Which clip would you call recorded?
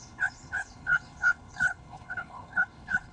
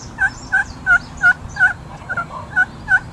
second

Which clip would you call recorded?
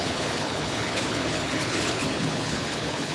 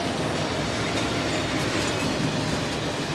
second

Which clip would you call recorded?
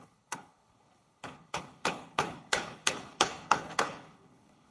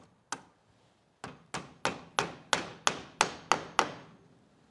second